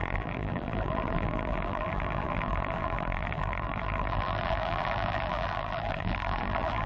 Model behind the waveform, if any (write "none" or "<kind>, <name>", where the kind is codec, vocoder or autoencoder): vocoder, BigVGAN v2